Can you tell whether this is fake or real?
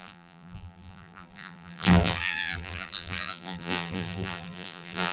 fake